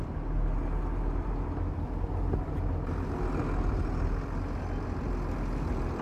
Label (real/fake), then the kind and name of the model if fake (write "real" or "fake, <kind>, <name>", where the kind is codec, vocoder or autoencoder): real